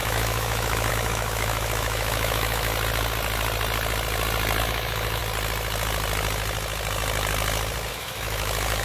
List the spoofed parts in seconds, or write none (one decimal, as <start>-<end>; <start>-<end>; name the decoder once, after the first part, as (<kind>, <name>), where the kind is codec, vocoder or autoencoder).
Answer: 0.0-2.7 (autoencoder, DAC-VAE); 4.6-5.2; 7.9-8.8